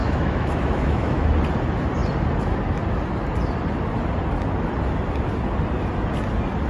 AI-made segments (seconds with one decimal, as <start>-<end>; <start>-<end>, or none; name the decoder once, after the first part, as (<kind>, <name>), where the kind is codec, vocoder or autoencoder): 0.0-1.3 (autoencoder, DAC-VAE)